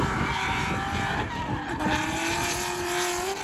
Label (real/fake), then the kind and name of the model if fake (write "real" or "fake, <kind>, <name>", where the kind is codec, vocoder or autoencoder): real